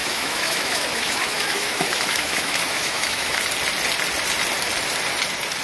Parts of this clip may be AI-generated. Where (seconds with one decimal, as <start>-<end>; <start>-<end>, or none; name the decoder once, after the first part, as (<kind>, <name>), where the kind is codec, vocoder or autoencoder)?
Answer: 0.0-3.4 (autoencoder, DAC-VAE)